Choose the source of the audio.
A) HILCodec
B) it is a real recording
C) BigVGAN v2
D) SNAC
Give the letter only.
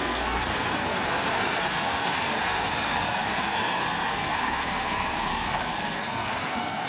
D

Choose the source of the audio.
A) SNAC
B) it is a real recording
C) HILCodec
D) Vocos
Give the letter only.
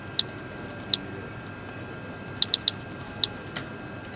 B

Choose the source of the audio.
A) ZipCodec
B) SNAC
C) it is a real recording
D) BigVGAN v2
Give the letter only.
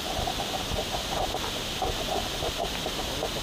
C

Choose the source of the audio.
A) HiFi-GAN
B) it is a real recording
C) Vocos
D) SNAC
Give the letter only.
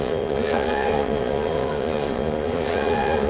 C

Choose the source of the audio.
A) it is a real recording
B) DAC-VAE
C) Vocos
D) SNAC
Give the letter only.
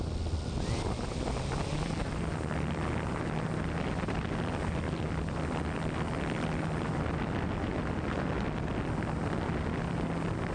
A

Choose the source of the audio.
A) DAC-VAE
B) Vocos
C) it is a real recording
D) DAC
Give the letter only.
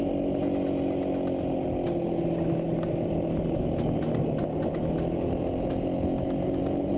C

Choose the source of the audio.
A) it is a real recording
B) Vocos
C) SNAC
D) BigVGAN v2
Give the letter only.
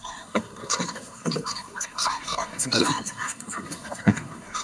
C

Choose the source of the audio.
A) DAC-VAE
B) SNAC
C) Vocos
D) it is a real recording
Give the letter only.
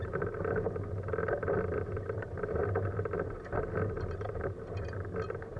D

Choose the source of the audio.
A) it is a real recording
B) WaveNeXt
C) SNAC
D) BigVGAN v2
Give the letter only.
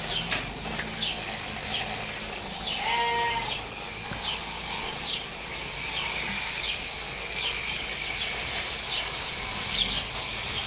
A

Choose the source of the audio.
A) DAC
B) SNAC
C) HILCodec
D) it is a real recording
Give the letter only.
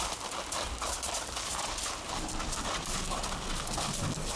D